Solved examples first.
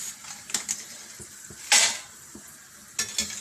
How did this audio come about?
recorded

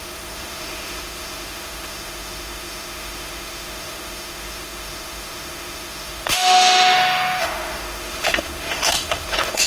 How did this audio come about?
remade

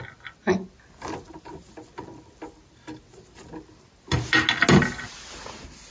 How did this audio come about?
recorded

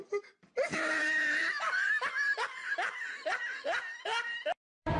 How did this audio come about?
remade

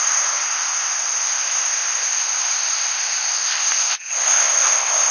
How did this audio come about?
remade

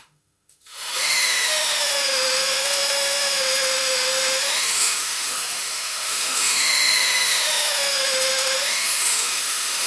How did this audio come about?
remade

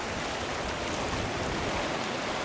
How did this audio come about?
recorded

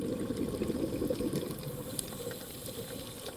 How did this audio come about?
recorded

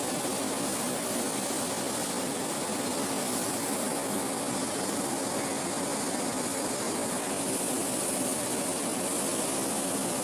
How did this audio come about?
recorded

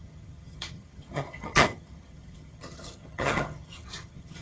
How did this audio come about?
remade